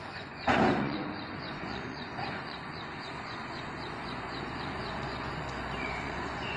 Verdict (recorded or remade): remade